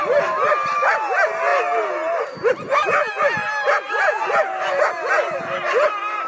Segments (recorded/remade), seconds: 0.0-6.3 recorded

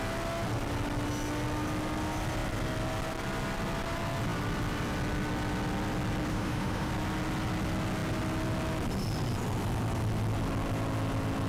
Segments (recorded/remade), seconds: 0.0-6.3 recorded; 6.3-6.9 remade; 6.9-11.5 recorded

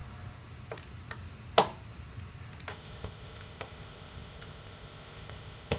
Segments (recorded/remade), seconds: 0.0-2.7 recorded; 2.7-5.8 remade